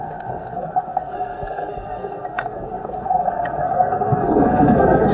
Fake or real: fake